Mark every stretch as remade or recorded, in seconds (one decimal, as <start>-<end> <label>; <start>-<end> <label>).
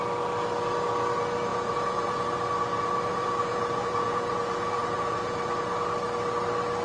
0.0-1.5 recorded; 1.5-2.2 remade; 2.2-3.1 recorded; 3.1-5.5 remade; 5.5-6.8 recorded